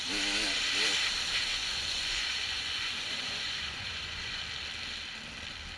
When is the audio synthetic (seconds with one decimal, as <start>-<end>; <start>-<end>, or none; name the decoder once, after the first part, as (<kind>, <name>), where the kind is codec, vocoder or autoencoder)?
1.5-4.4 (vocoder, Vocos)